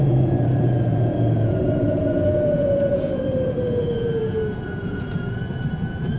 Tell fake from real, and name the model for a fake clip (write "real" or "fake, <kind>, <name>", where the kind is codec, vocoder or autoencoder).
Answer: fake, vocoder, Vocos